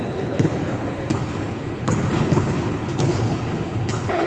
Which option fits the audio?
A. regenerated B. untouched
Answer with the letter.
A